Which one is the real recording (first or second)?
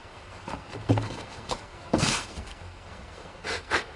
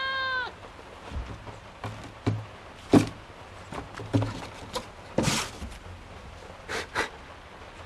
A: second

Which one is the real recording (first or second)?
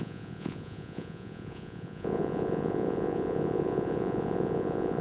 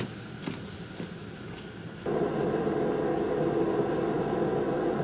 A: second